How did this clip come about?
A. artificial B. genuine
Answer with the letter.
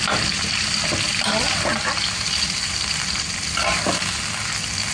B